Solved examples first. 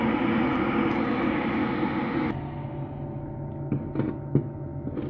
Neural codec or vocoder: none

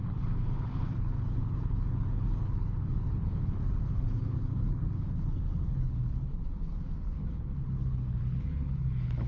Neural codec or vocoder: codec, HILCodec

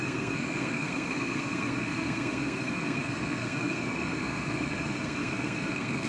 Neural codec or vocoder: codec, SNAC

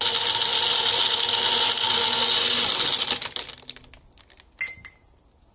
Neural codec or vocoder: none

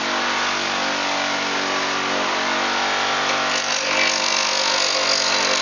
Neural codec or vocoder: none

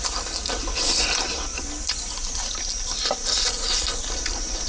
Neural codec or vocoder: none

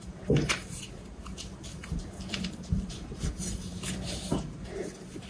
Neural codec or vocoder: vocoder, BigVGAN v2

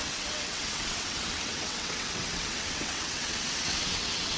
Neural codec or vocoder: vocoder, WaveNeXt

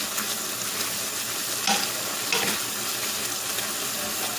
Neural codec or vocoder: none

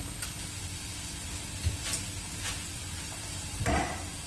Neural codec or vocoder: none